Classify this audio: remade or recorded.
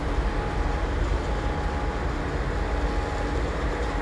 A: recorded